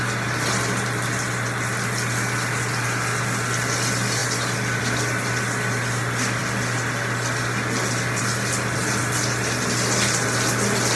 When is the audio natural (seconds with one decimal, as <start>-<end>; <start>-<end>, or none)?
0.0-11.0